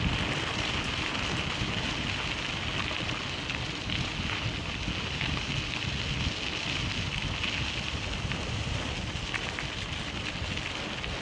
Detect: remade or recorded recorded